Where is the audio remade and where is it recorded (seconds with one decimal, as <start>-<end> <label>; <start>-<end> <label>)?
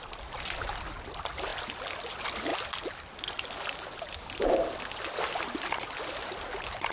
0.0-6.9 recorded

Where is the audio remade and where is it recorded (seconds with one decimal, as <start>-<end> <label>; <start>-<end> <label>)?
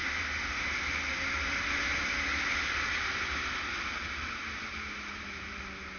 0.0-4.7 recorded; 4.7-5.6 remade; 5.6-6.0 recorded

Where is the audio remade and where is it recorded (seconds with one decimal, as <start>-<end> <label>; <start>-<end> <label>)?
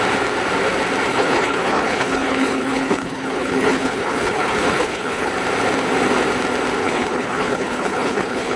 0.0-1.1 recorded; 1.1-5.3 remade; 5.3-6.8 recorded; 6.8-8.6 remade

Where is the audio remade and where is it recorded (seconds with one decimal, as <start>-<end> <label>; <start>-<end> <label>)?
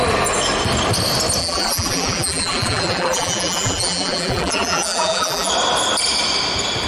0.0-1.4 recorded; 1.4-5.5 remade; 5.5-6.9 recorded